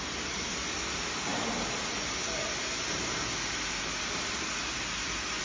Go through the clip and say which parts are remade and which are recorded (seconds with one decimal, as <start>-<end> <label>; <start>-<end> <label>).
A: 0.0-5.4 recorded